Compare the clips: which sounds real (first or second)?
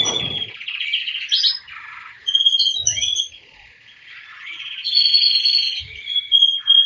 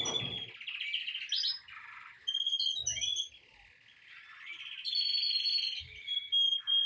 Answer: second